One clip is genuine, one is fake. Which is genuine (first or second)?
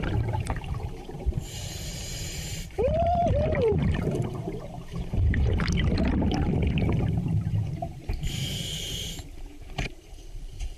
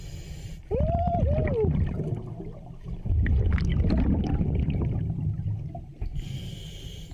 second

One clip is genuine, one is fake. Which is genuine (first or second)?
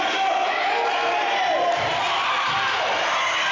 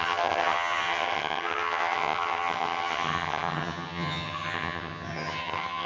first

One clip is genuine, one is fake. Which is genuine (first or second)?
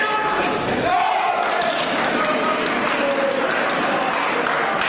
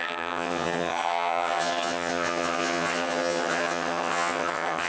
first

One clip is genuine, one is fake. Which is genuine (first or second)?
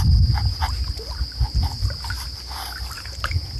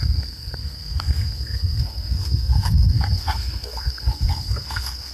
first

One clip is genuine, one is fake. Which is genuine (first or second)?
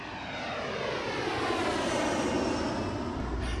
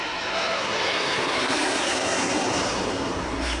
first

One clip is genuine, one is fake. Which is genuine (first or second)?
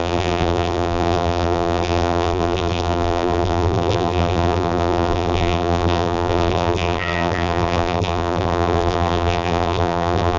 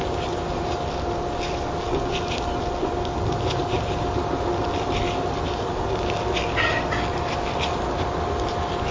second